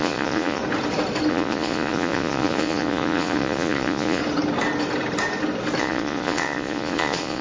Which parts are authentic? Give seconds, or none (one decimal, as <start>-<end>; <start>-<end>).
0.6-1.3; 4.2-5.8